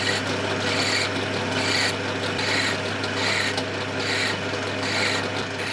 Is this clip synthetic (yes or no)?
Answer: no